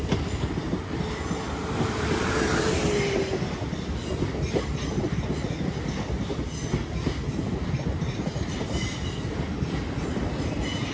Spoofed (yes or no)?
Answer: no